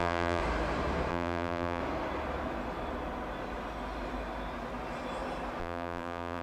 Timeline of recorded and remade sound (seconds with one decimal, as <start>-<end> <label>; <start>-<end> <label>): 0.0-0.4 remade; 0.4-1.1 recorded; 1.1-1.8 remade; 1.8-5.6 recorded; 5.6-6.4 remade